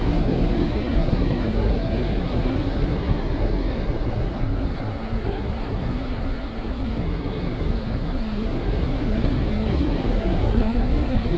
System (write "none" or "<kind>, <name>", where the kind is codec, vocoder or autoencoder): codec, SNAC